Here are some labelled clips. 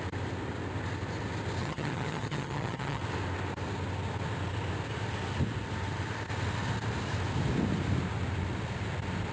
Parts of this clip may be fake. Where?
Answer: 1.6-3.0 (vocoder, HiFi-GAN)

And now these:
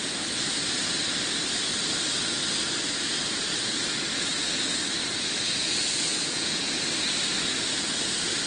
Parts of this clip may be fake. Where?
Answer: 5.0-6.8 (vocoder, Vocos)

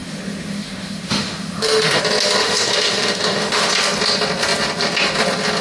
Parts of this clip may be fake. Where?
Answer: 0.0-2.0 (autoencoder, DAC-VAE); 2.4-3.7

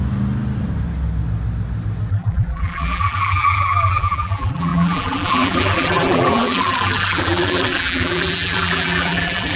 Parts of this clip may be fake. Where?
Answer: 2.1-9.6 (vocoder, BigVGAN v2)